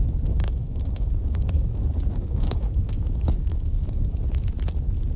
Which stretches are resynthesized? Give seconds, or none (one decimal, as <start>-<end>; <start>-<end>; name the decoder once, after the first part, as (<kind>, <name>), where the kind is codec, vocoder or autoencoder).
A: 0.4-1.8 (codec, DAC); 2.2-4.2